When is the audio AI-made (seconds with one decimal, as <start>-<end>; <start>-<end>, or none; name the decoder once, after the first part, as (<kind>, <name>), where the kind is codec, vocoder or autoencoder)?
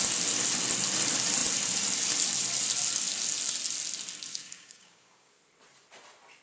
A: 4.3-5.4 (codec, DAC)